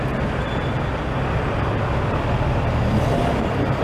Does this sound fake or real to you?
real